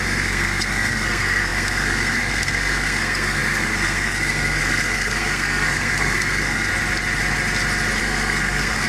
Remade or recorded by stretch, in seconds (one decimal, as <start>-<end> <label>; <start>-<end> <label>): 0.0-6.7 remade; 6.7-8.0 recorded; 8.0-8.9 remade